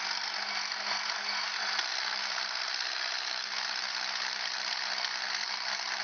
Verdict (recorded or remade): recorded